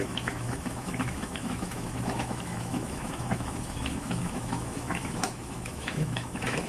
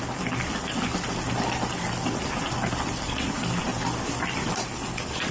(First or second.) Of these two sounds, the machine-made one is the first